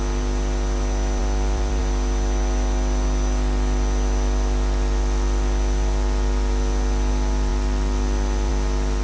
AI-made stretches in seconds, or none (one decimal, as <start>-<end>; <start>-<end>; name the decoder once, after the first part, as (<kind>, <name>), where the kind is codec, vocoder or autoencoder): 1.2-1.8 (vocoder, BigVGAN v2)